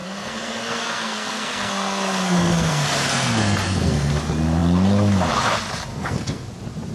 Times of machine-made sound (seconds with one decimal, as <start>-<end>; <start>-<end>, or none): 0.0-4.1; 5.9-6.5